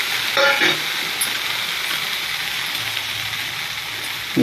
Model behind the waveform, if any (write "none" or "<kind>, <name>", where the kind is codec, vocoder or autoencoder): none